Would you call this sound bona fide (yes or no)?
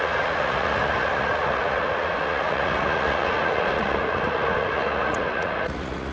no